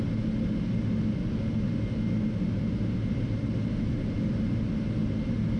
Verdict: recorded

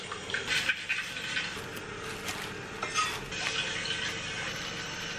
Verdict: recorded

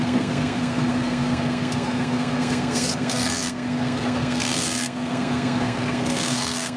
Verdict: remade